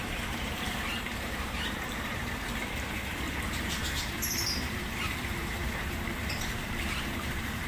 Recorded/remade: remade